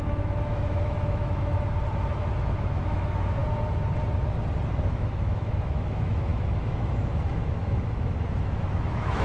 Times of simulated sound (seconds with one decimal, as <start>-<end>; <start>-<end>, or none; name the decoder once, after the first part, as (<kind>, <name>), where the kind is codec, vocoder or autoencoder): 0.0-1.5 (autoencoder, DAC-VAE); 2.1-3.4; 4.9-9.2